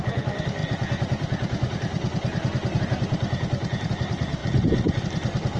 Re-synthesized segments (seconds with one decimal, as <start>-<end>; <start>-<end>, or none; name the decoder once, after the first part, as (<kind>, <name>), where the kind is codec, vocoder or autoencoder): none